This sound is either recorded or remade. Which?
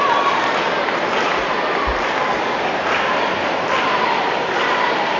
recorded